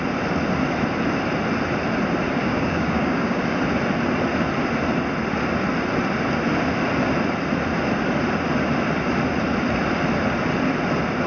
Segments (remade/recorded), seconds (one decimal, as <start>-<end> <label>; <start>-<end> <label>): 0.0-2.4 recorded; 2.4-3.4 remade; 3.4-11.3 recorded